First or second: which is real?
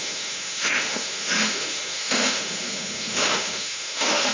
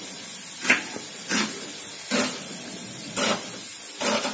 second